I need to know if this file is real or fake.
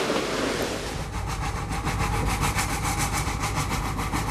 real